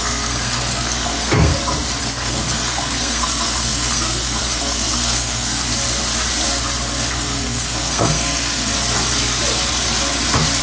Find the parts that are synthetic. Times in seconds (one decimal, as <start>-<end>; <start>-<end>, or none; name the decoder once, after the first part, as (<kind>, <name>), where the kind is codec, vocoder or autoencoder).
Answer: 0.0-1.5 (codec, SNAC); 2.0-5.7; 7.1-8.7